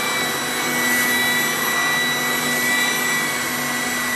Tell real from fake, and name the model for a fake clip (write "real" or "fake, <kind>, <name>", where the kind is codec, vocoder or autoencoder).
real